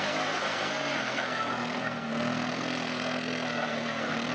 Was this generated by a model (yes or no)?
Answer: yes